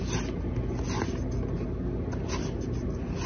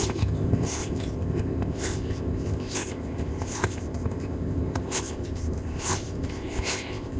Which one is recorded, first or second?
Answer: first